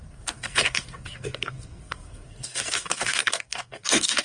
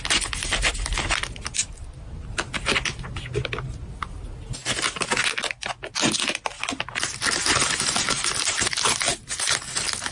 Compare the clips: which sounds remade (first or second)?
first